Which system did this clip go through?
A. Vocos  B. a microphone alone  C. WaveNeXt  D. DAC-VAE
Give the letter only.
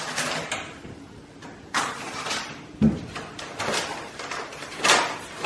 B